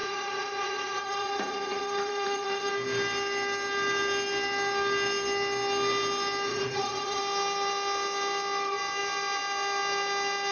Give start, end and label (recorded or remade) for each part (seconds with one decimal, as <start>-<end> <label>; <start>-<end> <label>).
0.0-2.7 remade; 2.7-6.5 recorded; 6.5-7.2 remade; 7.2-10.5 recorded